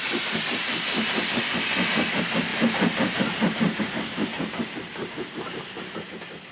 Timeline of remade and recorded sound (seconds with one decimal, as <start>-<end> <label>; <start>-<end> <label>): 0.0-2.5 recorded; 2.5-3.8 remade; 3.8-4.3 recorded; 4.3-6.1 remade; 6.1-6.5 recorded